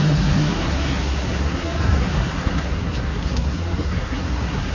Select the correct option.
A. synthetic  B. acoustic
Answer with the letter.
A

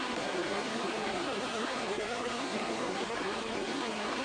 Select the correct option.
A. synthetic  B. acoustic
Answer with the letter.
A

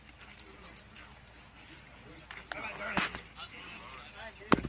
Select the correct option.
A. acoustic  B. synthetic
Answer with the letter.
A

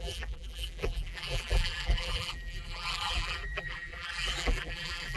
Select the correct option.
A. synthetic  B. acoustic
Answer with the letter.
A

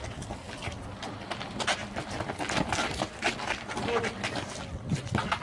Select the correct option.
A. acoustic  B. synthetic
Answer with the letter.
A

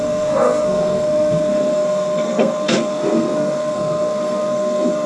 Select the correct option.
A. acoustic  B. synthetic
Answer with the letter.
B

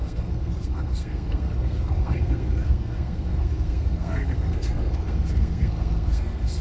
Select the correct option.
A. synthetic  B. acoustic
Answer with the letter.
A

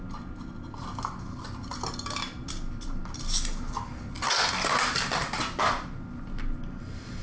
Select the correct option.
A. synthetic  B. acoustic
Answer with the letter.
B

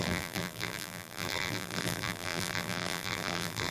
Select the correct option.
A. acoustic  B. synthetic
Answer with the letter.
B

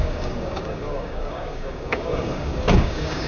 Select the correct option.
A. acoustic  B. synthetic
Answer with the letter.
B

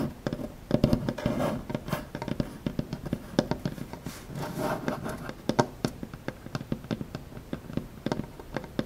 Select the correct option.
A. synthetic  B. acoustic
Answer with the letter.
B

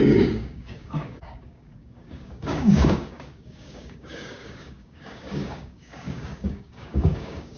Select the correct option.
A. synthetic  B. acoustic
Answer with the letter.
A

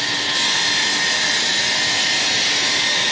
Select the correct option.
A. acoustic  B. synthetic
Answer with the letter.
A